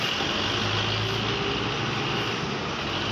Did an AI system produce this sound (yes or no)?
no